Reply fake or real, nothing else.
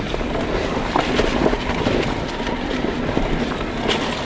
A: real